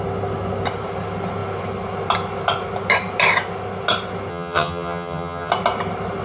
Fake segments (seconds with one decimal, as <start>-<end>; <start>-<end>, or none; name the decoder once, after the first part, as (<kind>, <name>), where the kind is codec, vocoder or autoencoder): 4.3-5.5 (vocoder, HiFi-GAN)

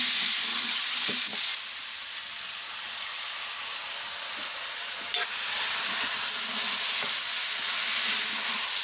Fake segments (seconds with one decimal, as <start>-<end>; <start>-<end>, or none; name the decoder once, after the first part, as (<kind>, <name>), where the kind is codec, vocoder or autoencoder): 0.5-1.1 (vocoder, HiFi-GAN)

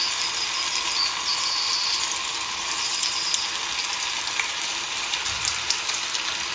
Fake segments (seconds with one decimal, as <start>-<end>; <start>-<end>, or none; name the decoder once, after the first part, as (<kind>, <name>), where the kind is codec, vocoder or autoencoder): none

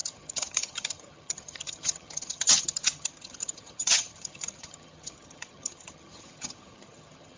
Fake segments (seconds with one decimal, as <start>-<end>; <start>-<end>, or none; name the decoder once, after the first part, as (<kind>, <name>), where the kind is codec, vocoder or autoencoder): 0.0-7.4 (vocoder, HiFi-GAN)

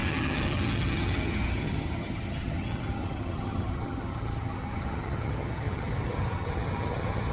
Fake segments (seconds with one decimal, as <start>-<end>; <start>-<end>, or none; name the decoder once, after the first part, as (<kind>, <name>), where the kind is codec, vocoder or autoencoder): 0.0-7.3 (vocoder, HiFi-GAN)